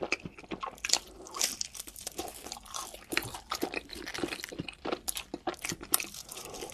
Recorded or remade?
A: remade